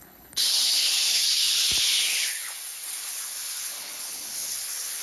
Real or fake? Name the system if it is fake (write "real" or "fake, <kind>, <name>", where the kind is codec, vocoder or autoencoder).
fake, codec, HILCodec